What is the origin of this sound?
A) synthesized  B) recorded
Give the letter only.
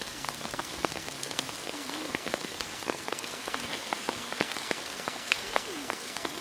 A